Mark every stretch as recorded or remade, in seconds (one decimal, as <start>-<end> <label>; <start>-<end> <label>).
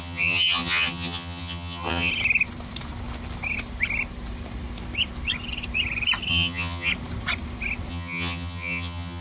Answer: 0.0-2.1 remade; 2.1-6.3 recorded; 6.3-6.9 remade; 6.9-7.9 recorded; 7.9-9.2 remade